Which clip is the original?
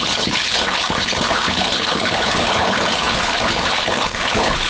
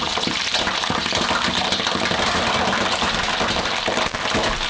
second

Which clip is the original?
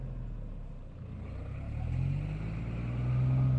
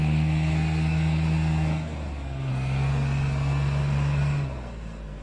first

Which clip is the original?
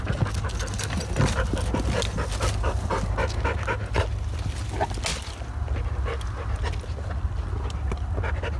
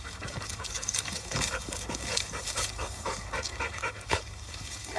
first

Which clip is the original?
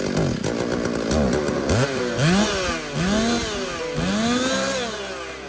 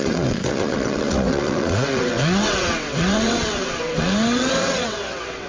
first